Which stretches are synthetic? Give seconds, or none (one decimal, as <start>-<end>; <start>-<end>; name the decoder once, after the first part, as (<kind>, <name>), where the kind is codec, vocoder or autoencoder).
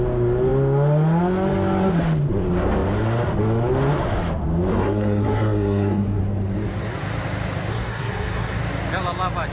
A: 4.7-6.2 (codec, SNAC); 7.7-8.6